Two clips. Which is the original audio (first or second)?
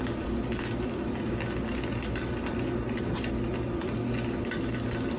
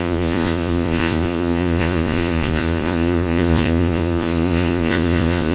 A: first